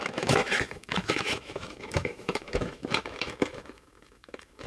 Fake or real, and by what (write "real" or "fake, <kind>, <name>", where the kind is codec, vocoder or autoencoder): fake, autoencoder, DAC-VAE